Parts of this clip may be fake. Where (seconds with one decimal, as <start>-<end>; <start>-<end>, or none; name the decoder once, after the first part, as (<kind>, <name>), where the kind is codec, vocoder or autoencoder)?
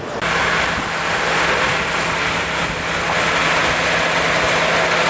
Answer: none